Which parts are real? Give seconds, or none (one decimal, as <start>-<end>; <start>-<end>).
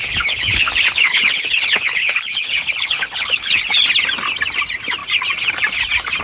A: 3.6-6.2